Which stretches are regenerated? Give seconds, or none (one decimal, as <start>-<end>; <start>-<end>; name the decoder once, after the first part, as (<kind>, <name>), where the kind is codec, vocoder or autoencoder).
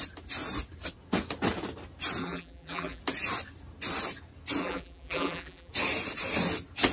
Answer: 2.2-3.0 (vocoder, BigVGAN v2); 4.6-5.7